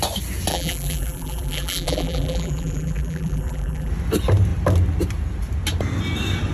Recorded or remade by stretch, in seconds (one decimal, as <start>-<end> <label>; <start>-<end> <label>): 0.0-0.5 recorded; 0.5-3.9 remade; 3.9-6.5 recorded